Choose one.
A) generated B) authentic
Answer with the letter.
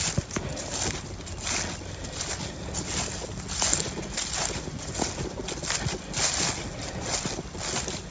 B